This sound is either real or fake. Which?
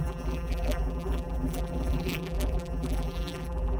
fake